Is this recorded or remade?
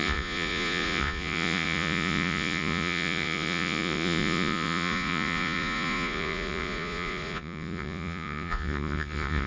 remade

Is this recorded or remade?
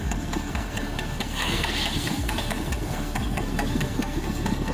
remade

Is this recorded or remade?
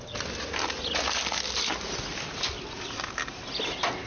recorded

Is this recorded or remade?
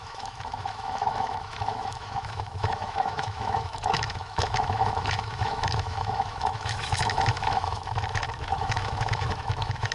remade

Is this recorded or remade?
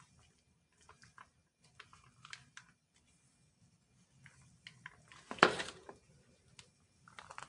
recorded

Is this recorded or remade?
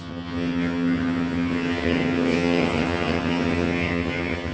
remade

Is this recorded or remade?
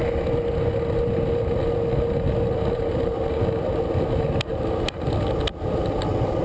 recorded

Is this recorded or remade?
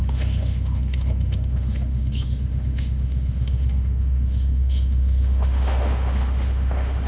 remade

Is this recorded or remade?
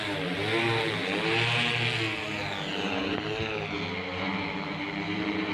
recorded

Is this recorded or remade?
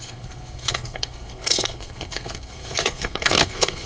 remade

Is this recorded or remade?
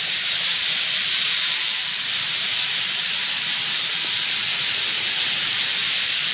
remade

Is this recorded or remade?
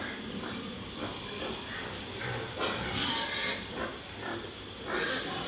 recorded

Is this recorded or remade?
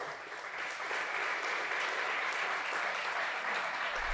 recorded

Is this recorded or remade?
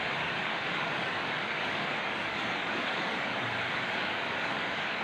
remade